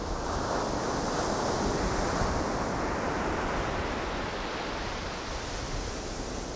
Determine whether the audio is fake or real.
real